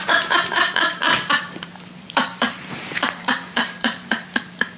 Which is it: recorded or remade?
remade